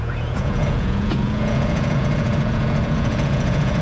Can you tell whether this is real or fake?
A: fake